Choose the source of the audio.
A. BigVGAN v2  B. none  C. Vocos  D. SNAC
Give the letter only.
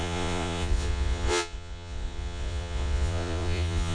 C